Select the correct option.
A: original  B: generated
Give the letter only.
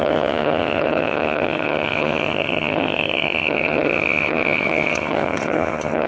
B